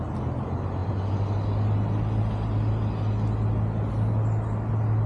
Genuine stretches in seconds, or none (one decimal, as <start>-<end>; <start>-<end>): 0.0-5.1